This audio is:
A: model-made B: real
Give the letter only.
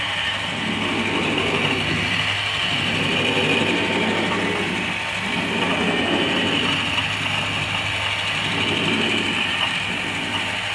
B